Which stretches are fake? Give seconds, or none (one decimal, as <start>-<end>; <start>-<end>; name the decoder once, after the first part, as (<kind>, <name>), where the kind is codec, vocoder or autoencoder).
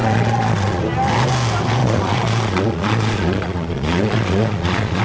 0.0-0.8 (vocoder, Vocos); 1.8-5.0